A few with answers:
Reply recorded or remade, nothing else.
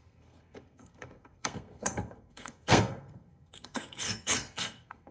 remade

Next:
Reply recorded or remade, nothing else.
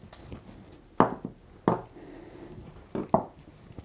recorded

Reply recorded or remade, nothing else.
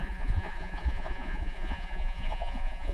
remade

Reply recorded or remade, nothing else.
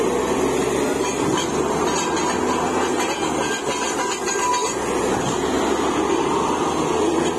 recorded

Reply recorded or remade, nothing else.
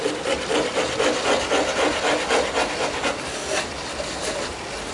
recorded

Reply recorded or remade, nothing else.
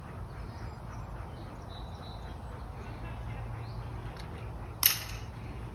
recorded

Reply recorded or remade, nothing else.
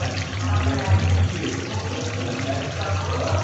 remade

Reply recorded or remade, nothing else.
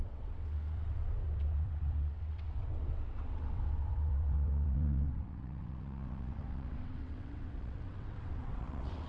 remade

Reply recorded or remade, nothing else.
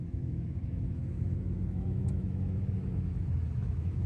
remade